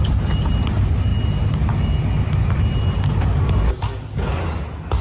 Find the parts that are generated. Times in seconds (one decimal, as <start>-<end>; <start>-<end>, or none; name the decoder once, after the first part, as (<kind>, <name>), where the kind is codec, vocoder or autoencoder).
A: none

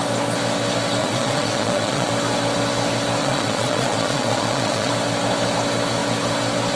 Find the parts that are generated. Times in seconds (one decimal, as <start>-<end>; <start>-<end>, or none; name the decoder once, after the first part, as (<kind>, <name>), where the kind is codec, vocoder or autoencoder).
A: 1.0-2.1 (vocoder, Vocos); 3.2-4.9

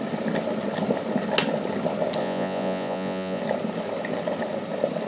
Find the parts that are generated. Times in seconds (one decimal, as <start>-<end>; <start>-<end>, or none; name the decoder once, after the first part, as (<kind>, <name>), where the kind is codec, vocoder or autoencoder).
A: 2.2-3.4 (vocoder, Vocos)

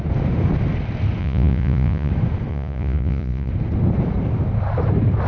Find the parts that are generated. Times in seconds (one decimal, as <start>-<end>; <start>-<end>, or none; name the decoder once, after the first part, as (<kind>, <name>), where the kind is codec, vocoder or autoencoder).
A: 1.2-2.1 (vocoder, Vocos); 2.5-3.5